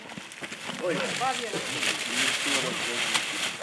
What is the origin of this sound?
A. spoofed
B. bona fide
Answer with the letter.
B